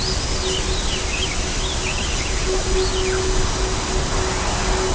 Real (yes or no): yes